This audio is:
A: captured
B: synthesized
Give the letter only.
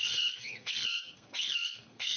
B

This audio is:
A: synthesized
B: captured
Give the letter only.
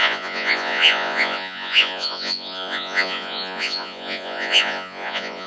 A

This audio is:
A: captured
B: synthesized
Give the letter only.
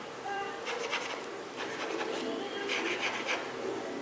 B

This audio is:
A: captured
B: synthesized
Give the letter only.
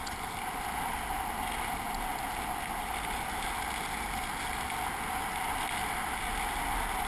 A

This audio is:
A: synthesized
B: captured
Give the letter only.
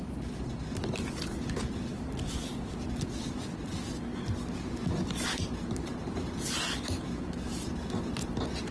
B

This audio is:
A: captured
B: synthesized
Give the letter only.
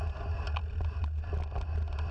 A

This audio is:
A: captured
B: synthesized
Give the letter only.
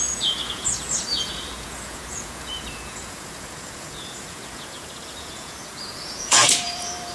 B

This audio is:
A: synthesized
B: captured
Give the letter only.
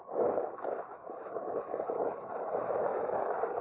A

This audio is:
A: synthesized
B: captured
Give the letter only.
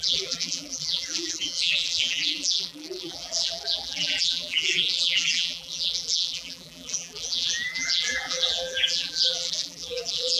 A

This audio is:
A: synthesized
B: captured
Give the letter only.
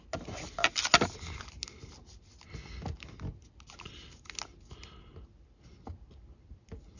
B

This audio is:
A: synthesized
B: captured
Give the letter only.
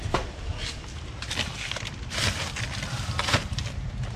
A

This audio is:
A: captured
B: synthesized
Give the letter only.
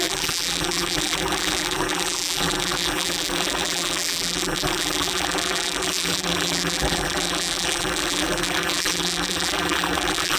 B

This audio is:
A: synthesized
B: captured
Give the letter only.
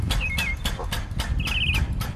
B